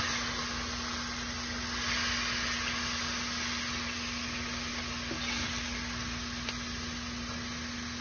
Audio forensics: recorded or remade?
recorded